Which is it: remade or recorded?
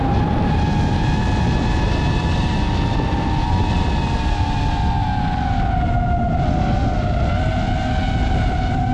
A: recorded